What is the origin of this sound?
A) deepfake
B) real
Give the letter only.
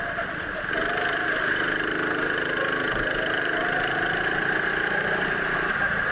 B